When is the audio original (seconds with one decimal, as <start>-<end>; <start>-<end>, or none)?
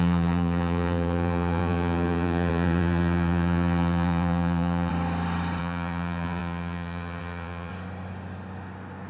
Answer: 4.9-5.6; 7.7-9.1